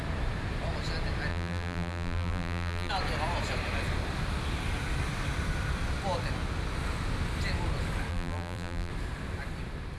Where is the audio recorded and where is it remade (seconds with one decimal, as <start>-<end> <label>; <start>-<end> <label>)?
0.0-1.3 recorded; 1.3-2.9 remade; 2.9-8.1 recorded; 8.1-8.9 remade; 8.9-10.0 recorded